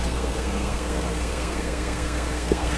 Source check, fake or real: fake